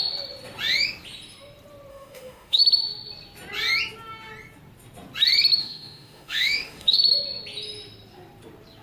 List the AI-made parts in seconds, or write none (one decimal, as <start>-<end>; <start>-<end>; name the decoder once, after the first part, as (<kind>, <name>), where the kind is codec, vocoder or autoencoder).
1.9-2.6 (autoencoder, DAC-VAE); 5.6-7.0

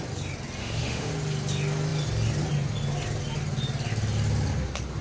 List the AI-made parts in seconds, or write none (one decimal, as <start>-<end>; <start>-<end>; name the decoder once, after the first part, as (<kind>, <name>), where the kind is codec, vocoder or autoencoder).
0.6-1.1 (autoencoder, DAC-VAE)

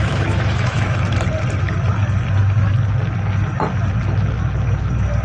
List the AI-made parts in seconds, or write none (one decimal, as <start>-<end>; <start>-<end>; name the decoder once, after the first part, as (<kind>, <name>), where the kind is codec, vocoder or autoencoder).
0.0-1.0 (autoencoder, DAC-VAE)

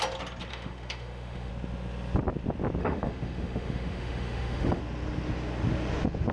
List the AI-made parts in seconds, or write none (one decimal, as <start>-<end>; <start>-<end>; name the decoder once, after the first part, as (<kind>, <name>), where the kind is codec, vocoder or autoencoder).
0.5-1.5 (autoencoder, DAC-VAE); 2.8-4.8

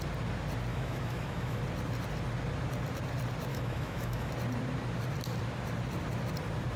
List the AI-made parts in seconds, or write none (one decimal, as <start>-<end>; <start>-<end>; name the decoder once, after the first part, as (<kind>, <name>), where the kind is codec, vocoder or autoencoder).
0.7-1.6 (autoencoder, DAC-VAE); 3.5-4.3

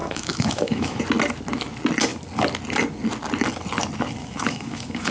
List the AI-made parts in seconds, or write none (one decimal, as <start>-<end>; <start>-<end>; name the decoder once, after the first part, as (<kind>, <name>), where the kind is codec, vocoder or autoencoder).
0.0-1.0 (autoencoder, DAC-VAE); 4.2-5.1

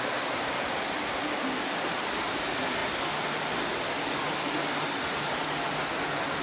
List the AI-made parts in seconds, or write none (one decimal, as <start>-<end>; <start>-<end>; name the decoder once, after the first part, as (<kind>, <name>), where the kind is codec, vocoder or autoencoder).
none

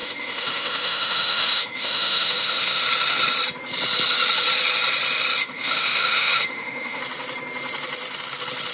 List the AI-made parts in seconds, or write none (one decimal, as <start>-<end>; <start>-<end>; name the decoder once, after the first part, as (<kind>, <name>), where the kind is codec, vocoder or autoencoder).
0.0-2.8 (autoencoder, DAC-VAE); 5.4-7.0